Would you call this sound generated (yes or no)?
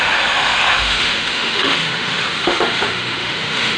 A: yes